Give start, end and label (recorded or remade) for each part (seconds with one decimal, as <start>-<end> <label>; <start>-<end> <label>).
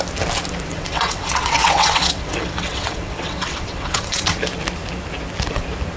0.0-0.7 recorded; 0.7-4.3 remade; 4.3-6.0 recorded